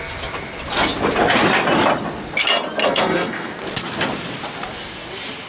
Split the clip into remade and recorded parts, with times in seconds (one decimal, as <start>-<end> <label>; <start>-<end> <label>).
0.0-2.8 recorded; 2.8-3.5 remade; 3.5-5.5 recorded